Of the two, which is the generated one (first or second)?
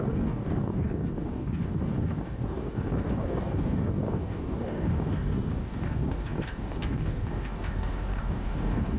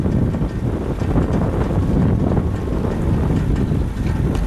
first